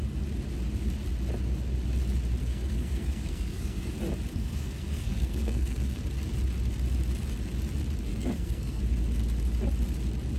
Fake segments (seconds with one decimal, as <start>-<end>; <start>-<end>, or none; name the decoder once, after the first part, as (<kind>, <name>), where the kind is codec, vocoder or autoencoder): 2.4-3.9 (codec, SNAC); 4.3-6.0; 8.1-8.8